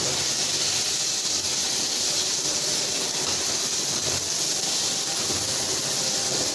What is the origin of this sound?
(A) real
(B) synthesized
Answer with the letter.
A